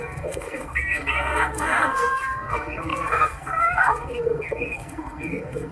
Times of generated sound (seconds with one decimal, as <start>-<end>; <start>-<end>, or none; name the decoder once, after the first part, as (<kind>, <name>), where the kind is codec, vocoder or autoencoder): 0.0-5.7 (codec, SNAC)